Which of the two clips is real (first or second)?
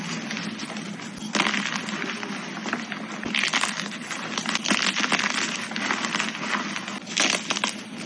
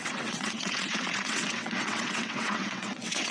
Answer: first